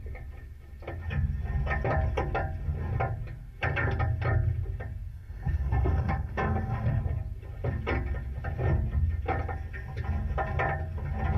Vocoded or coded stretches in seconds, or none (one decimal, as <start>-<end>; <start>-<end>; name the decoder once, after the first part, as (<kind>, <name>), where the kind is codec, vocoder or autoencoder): 5.1-7.0 (codec, SNAC)